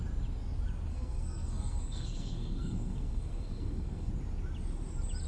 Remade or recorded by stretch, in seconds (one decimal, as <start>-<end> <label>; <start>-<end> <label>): 0.0-0.9 recorded; 0.9-4.1 remade; 4.1-5.3 recorded